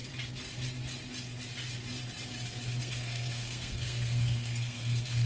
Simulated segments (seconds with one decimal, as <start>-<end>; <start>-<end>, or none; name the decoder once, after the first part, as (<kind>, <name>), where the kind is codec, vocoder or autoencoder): 2.8-5.3 (codec, SNAC)